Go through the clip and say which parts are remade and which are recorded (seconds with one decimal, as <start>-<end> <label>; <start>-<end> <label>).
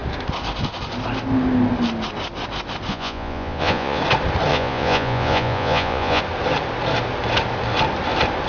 0.0-2.9 recorded; 2.9-4.0 remade; 4.0-4.5 recorded; 4.5-6.2 remade; 6.2-8.5 recorded